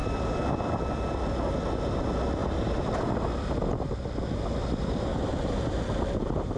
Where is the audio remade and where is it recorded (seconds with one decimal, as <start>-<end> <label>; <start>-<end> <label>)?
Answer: 0.0-2.4 recorded; 2.4-3.0 remade; 3.0-5.1 recorded; 5.1-6.6 remade